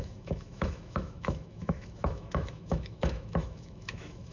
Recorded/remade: remade